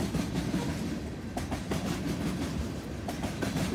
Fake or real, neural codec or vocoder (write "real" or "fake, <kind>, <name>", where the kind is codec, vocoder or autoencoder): real